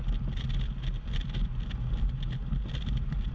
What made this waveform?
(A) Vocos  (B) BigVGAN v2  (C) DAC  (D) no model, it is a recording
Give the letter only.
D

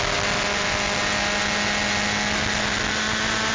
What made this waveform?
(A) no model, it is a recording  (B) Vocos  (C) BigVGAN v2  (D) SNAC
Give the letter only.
A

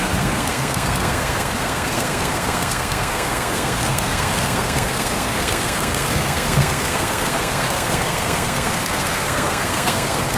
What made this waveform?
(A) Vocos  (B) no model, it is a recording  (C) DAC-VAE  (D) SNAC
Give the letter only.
D